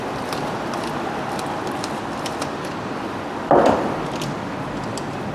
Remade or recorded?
recorded